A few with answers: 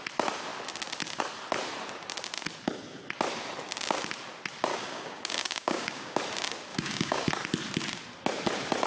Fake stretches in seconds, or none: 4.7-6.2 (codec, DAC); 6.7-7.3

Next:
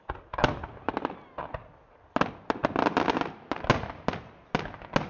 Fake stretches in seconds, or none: none

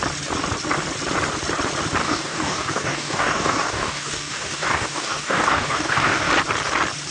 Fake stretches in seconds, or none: 2.0-6.3 (codec, DAC)

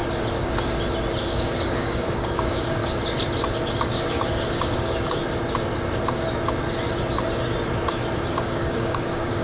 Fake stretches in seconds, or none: 1.2-2.8 (codec, DAC); 3.8-5.2; 8.3-9.4

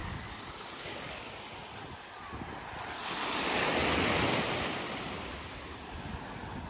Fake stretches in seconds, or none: 0.0-1.3 (codec, DAC)

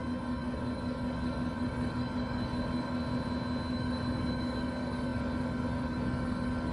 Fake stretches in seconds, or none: 0.0-3.0 (codec, DAC); 3.7-6.7

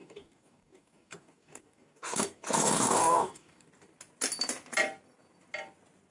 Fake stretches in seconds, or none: 0.0-3.7 (codec, DAC)

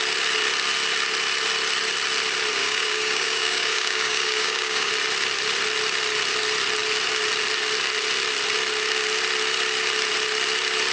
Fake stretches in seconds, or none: 2.6-4.9 (codec, DAC)